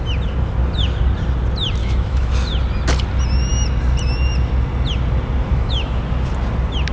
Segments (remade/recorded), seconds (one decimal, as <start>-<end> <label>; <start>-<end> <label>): 0.0-1.8 recorded; 1.8-2.3 remade; 2.3-5.5 recorded; 5.5-6.0 remade; 6.0-6.9 recorded